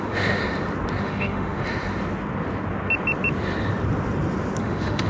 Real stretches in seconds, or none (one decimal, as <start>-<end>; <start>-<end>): 0.4-1.0; 1.6-4.6